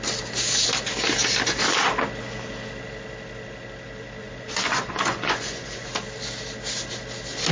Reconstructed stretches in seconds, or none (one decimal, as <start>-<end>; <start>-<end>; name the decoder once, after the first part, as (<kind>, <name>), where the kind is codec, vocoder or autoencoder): 4.2-5.9 (vocoder, Vocos)